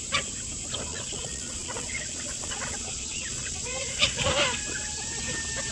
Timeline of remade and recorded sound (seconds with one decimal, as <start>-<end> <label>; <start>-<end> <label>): 0.0-0.9 recorded; 0.9-4.3 remade; 4.3-5.7 recorded